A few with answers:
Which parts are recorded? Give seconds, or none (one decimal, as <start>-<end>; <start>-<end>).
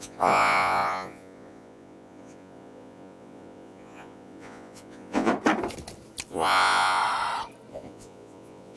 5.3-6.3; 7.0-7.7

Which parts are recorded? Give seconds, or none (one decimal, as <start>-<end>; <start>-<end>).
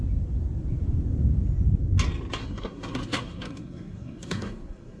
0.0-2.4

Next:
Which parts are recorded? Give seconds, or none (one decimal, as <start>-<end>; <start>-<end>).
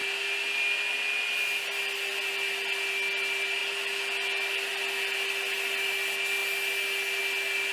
0.0-7.7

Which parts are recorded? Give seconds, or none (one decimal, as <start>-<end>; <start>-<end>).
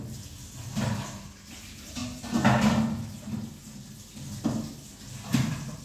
0.0-5.8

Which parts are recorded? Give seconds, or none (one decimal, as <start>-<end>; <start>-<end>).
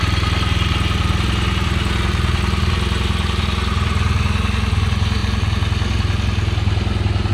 0.0-7.3